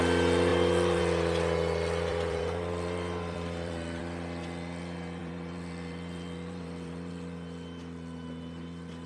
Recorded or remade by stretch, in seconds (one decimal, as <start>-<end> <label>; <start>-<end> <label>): 0.0-0.5 recorded; 0.5-1.0 remade; 1.0-2.1 recorded; 2.1-4.0 remade; 4.0-5.2 recorded; 5.2-7.1 remade; 7.1-9.1 recorded